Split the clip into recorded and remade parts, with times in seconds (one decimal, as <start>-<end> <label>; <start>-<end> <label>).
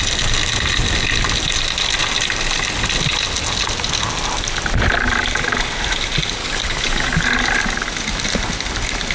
0.0-6.4 recorded; 6.4-7.3 remade; 7.3-9.1 recorded